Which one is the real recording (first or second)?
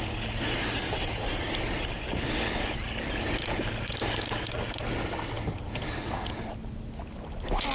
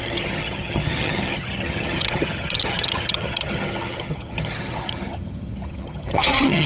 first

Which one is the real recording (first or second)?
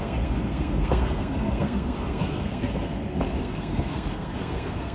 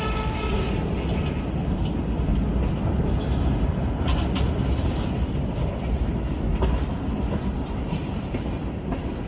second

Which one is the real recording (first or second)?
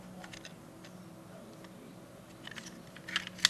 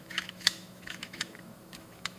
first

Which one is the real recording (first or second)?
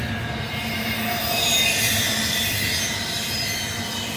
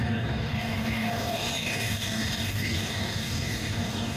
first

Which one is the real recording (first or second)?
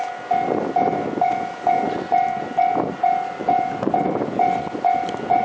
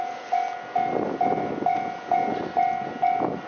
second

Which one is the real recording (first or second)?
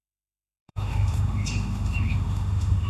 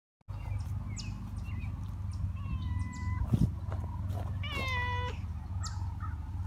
second